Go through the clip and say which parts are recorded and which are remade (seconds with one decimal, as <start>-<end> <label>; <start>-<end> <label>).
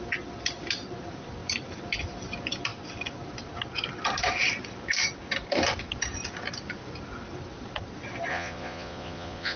0.0-8.3 recorded; 8.3-9.6 remade